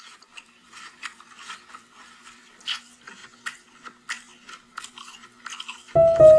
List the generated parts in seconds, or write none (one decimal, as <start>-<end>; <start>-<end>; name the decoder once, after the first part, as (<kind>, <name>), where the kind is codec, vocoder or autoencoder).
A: 0.6-2.8 (vocoder, BigVGAN v2)